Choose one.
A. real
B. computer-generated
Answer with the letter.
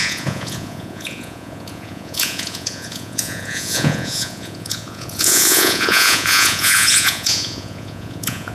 B